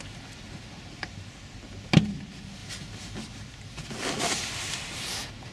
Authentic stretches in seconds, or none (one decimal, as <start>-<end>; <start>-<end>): 0.0-5.5